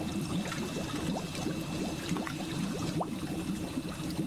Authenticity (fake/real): real